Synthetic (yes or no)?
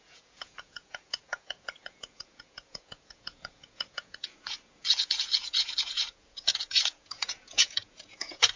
yes